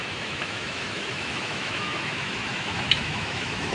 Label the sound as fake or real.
fake